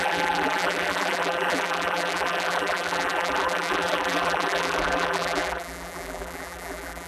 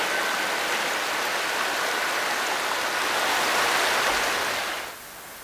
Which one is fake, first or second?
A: first